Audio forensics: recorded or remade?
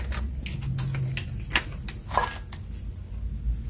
recorded